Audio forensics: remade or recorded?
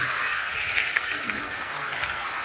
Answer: remade